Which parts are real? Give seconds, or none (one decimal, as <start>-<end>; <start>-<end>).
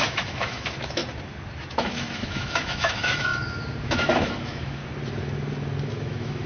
1.0-1.7; 3.3-3.8; 4.8-5.8